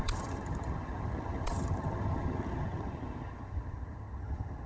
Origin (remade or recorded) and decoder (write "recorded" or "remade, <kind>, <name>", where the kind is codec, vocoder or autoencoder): remade, vocoder, HiFi-GAN